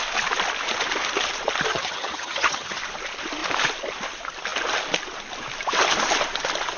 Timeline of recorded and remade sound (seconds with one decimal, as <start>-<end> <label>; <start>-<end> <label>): 0.0-1.7 recorded; 1.7-2.8 remade; 2.8-6.8 recorded

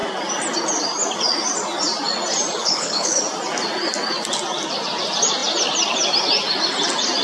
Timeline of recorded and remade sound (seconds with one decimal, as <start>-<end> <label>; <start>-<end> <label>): 0.0-2.6 recorded; 2.6-3.2 remade; 3.2-7.2 recorded

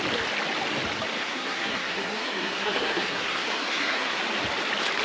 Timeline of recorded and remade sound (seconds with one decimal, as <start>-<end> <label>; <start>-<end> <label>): 0.0-1.2 recorded; 1.2-4.2 remade; 4.2-5.0 recorded

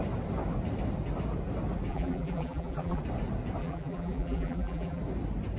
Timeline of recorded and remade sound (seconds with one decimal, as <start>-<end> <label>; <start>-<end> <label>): 0.0-1.9 recorded; 1.9-3.0 remade; 3.0-3.6 recorded; 3.6-5.0 remade; 5.0-5.6 recorded

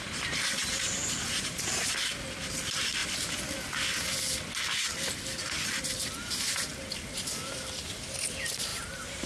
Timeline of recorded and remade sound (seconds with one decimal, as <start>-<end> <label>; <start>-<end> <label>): 0.0-0.6 recorded; 0.6-1.7 remade; 1.7-8.7 recorded; 8.7-9.3 remade

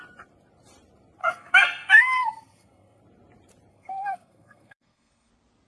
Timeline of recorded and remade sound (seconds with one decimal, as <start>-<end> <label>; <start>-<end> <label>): 0.0-1.2 recorded; 1.2-3.0 remade; 3.0-3.7 recorded; 3.7-5.3 remade; 5.3-5.7 recorded

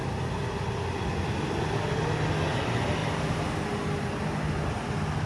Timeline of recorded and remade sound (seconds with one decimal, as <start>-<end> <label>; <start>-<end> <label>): 0.0-5.3 recorded